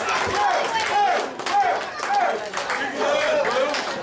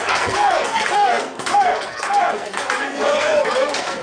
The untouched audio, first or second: first